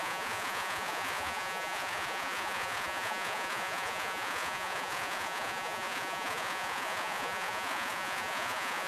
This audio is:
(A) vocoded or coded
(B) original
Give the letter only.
A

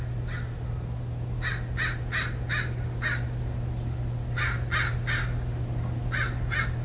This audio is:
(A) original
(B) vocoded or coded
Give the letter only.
A